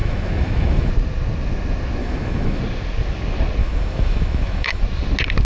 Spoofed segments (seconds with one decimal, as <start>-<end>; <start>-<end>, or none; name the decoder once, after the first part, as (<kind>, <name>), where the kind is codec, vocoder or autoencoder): 0.0-0.9 (autoencoder, DAC-VAE); 2.0-2.6; 3.6-4.8